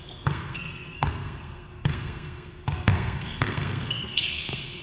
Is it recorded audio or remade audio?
remade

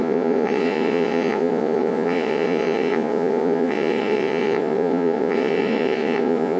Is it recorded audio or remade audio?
remade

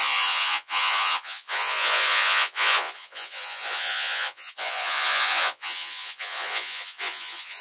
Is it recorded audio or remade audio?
remade